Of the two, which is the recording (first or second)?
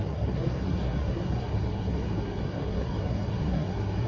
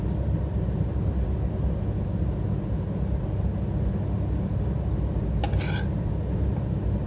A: second